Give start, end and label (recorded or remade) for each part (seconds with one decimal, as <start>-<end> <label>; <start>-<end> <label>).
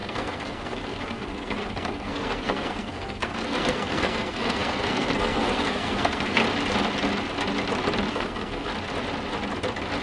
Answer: 0.0-6.4 remade; 6.4-8.1 recorded; 8.1-8.7 remade; 8.7-10.0 recorded